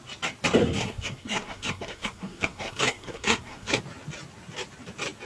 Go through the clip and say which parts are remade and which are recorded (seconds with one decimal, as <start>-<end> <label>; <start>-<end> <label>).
0.0-0.6 recorded; 0.6-3.8 remade; 3.8-5.3 recorded